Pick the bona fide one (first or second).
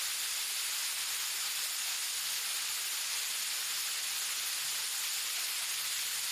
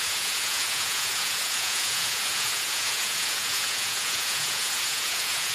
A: first